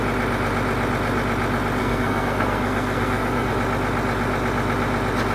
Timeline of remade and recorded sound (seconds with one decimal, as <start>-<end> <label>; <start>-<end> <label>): 0.0-1.8 recorded; 1.8-3.5 remade; 3.5-5.3 recorded